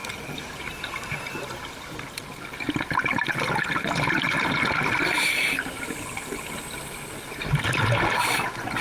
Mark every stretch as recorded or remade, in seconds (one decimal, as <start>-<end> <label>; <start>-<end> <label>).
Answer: 0.0-8.8 recorded